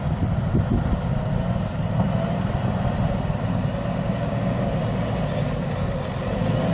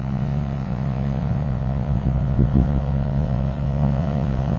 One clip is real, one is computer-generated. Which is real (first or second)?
first